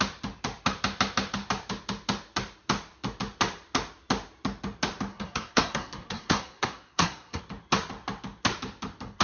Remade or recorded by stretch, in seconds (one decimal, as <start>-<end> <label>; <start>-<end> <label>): 0.0-5.1 recorded; 5.1-7.4 remade; 7.4-9.2 recorded